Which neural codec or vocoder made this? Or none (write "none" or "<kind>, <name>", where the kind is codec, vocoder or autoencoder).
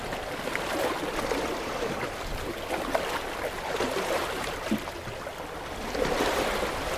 none